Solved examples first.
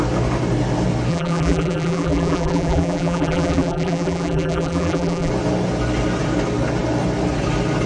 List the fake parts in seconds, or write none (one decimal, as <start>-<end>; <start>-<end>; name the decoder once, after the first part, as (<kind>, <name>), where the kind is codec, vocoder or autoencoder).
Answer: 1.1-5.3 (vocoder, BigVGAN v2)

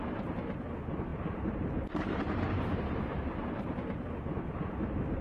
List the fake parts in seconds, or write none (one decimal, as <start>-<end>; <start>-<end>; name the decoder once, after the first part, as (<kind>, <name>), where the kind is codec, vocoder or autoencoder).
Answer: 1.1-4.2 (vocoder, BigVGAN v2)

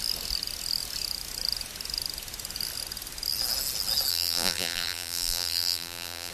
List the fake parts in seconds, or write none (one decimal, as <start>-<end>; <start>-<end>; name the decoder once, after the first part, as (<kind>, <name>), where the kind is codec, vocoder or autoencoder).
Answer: 4.1-6.3 (vocoder, BigVGAN v2)